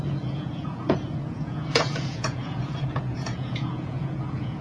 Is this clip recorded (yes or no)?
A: no